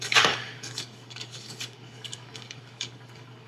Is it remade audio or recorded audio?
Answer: remade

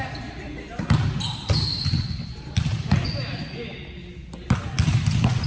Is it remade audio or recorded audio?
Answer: recorded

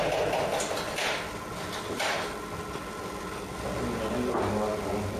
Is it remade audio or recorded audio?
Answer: recorded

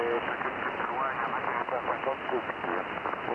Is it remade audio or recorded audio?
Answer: recorded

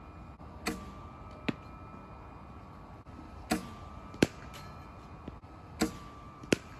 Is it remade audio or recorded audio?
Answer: recorded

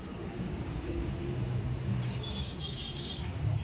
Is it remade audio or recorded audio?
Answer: remade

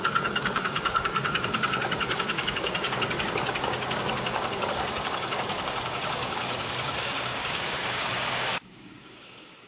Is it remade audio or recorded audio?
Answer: remade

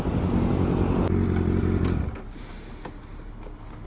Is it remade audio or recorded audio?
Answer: recorded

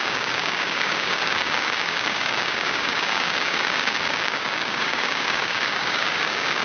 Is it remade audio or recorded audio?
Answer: remade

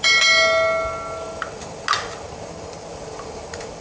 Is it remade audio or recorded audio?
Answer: recorded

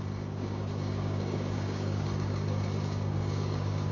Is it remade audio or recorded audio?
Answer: remade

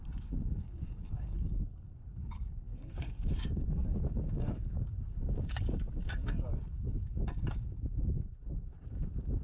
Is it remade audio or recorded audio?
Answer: remade